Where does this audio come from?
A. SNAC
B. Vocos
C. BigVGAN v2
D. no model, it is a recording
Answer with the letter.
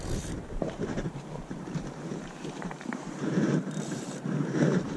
C